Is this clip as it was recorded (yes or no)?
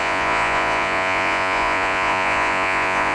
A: no